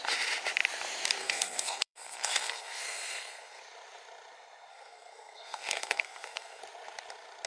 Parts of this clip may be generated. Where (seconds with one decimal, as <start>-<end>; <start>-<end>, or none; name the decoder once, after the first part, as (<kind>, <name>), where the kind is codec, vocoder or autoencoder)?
1.2-3.6 (codec, SNAC); 4.7-6.6